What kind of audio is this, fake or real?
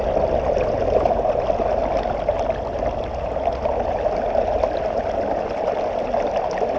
real